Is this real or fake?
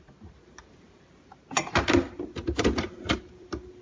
real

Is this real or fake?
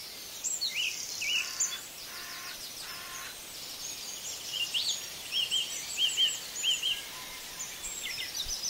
fake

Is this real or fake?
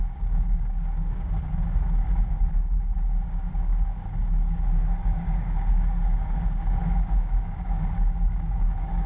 fake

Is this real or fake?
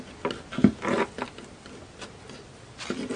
real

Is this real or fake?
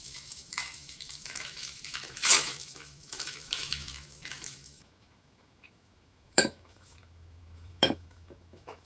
fake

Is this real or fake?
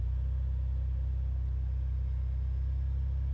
real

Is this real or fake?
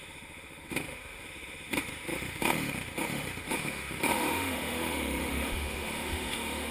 fake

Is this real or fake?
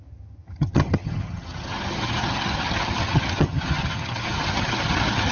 fake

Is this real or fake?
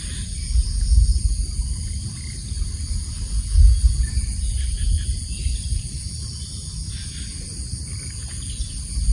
real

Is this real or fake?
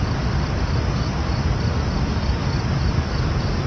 real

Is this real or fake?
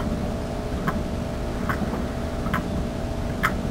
real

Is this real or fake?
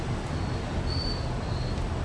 real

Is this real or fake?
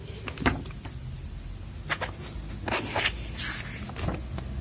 real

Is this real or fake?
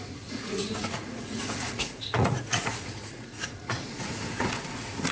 fake